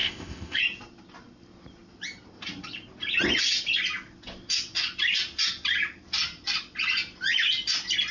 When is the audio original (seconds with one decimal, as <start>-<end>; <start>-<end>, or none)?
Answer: 0.6-8.1